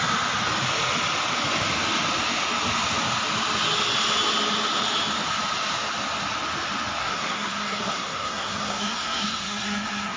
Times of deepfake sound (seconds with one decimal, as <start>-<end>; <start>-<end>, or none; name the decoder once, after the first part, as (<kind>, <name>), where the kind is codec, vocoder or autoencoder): 7.0-10.2 (codec, SNAC)